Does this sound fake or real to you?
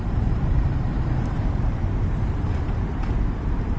fake